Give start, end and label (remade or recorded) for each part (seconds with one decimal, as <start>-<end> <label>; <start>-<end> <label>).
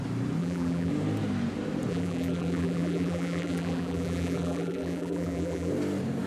0.0-0.4 recorded; 0.4-0.9 remade; 0.9-1.9 recorded; 1.9-5.7 remade; 5.7-6.3 recorded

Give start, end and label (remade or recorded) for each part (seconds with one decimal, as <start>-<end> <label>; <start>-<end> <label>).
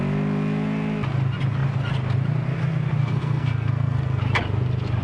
0.0-3.0 recorded; 3.0-4.2 remade; 4.2-5.0 recorded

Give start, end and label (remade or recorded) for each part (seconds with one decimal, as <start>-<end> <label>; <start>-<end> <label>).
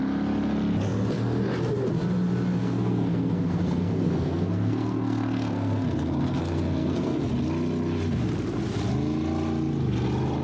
0.0-2.6 recorded; 2.6-7.3 remade; 7.3-10.4 recorded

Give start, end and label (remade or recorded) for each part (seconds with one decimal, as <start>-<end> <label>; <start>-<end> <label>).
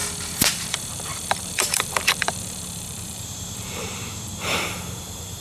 0.0-0.5 recorded; 0.5-5.4 remade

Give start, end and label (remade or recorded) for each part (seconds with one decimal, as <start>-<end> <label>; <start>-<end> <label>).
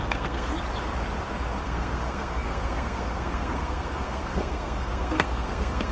0.0-0.5 remade; 0.5-1.6 recorded; 1.6-5.9 remade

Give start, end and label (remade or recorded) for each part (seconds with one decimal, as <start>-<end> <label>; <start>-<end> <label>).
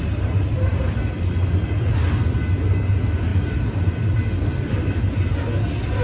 0.0-6.0 recorded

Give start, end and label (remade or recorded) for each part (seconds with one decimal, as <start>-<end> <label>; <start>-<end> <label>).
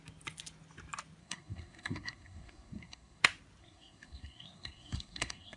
0.0-1.2 recorded; 1.2-3.2 remade; 3.2-3.6 recorded; 3.6-5.6 remade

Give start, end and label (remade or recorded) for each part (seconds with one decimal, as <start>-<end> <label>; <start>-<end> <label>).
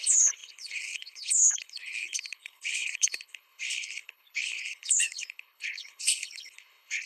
0.0-7.1 remade